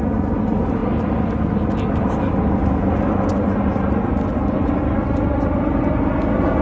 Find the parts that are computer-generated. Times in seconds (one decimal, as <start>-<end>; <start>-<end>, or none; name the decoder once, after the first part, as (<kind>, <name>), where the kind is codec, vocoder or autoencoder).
none

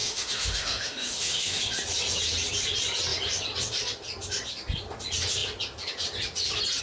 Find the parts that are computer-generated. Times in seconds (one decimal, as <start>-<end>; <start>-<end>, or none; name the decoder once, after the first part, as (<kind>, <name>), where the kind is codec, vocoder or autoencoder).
0.0-1.6 (autoencoder, DAC-VAE)

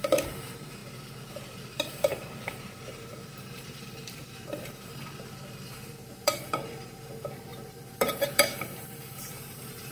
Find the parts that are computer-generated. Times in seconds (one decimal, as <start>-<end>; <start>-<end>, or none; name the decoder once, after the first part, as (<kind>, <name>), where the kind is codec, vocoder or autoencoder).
0.0-0.8 (vocoder, BigVGAN v2); 1.3-9.9

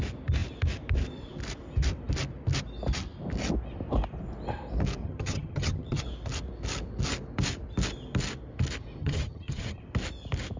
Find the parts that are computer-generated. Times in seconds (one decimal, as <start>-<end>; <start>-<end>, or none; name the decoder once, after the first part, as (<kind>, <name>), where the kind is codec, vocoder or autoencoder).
5.0-6.0 (vocoder, HiFi-GAN); 9.0-9.8

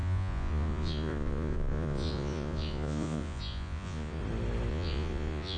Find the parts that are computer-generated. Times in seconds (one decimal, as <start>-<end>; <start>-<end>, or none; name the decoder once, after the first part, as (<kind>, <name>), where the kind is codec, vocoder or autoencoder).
0.0-4.2 (vocoder, Vocos); 4.7-5.6

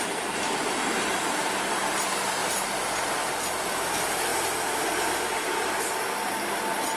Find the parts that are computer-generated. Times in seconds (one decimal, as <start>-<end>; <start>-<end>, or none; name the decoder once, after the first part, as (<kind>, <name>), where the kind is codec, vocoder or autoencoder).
none

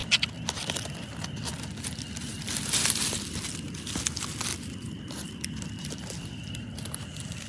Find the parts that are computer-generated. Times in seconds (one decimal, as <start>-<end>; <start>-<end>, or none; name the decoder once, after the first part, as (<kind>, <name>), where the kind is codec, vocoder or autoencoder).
0.0-1.2 (vocoder, BigVGAN v2); 4.5-6.3

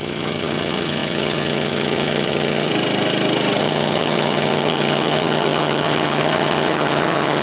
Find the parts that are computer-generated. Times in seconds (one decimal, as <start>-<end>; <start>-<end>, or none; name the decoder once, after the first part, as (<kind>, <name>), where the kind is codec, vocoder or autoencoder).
0.0-2.7 (vocoder, HiFi-GAN); 3.6-7.4